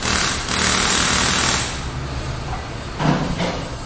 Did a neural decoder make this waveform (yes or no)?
no